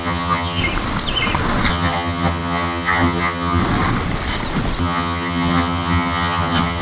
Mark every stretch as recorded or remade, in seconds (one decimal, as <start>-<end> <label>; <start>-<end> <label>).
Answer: 0.0-0.6 remade; 0.6-1.7 recorded; 1.7-3.6 remade; 3.6-4.8 recorded; 4.8-6.8 remade